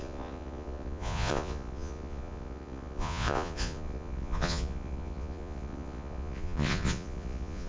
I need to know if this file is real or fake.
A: fake